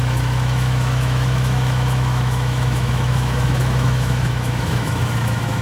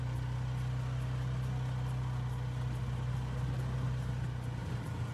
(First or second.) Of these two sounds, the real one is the second